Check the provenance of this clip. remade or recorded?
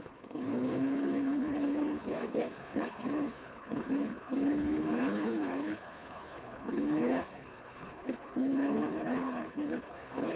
remade